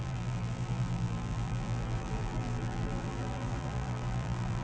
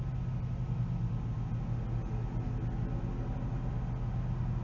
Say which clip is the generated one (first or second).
first